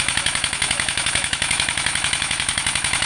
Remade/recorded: remade